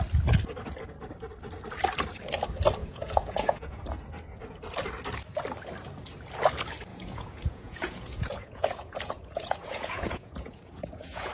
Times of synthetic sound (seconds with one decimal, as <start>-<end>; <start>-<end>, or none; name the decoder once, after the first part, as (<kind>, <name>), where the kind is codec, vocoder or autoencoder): 2.8-3.8 (vocoder, Vocos); 6.9-11.3